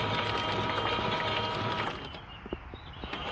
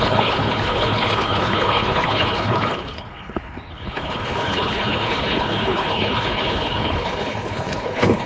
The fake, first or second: second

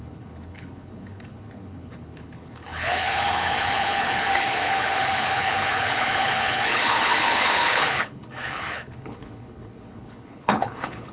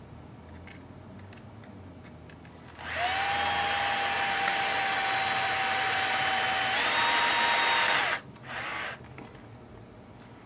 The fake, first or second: first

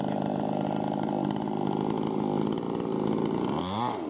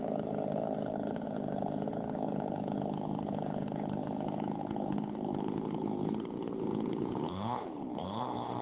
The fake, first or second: second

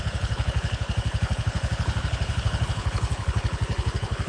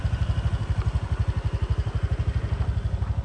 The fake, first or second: first